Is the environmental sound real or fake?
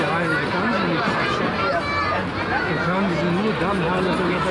real